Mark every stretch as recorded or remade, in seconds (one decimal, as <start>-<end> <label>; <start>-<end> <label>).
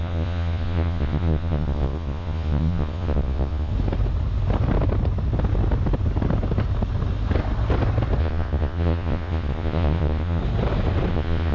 0.0-3.7 remade; 3.7-8.2 recorded; 8.2-10.4 remade; 10.4-11.1 recorded; 11.1-11.5 remade